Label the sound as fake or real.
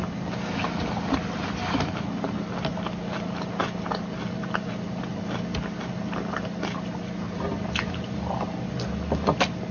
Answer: real